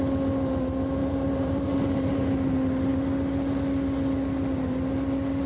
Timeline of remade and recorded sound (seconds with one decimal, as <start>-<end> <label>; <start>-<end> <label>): 0.0-1.0 recorded; 1.0-2.2 remade; 2.2-5.5 recorded